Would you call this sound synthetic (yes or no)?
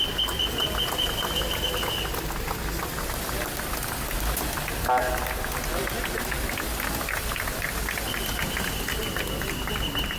no